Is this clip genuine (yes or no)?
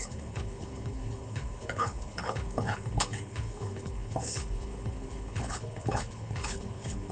no